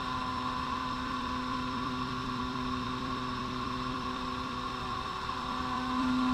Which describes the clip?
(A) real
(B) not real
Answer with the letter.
B